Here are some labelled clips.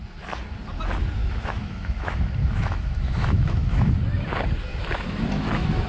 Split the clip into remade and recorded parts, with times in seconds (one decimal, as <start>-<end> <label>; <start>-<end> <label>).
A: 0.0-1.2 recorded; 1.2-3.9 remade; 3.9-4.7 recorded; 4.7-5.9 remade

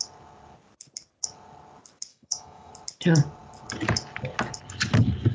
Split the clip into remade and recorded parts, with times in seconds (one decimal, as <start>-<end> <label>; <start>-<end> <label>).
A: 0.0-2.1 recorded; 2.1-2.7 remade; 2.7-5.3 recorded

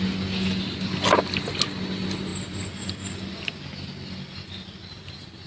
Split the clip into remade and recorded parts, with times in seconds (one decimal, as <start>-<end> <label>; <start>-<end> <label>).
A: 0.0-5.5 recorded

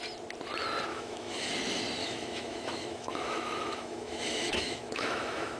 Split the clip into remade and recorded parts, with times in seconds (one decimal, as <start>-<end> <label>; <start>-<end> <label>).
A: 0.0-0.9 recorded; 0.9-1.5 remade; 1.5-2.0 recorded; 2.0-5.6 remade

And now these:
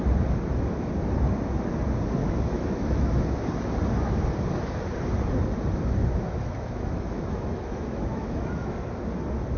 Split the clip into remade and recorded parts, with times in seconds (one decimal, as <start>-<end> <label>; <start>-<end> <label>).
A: 0.0-2.2 recorded; 2.2-3.1 remade; 3.1-6.0 recorded; 6.0-8.7 remade; 8.7-9.6 recorded

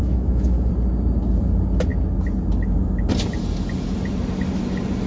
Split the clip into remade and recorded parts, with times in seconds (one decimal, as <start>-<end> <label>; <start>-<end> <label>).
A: 0.0-0.7 remade; 0.7-5.1 recorded